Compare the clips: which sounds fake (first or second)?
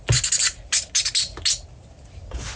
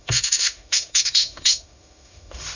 second